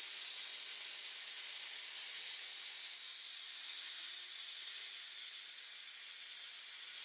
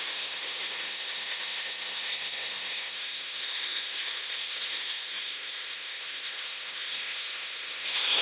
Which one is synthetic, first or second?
second